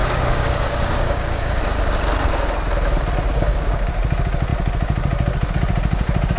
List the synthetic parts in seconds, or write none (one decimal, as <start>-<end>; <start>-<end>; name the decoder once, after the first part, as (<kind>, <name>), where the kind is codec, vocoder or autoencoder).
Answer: 0.0-1.6 (codec, DAC); 3.3-3.9